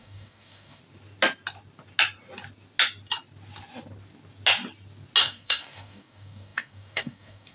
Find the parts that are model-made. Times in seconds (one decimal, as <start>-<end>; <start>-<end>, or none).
0.0-0.8; 5.2-7.5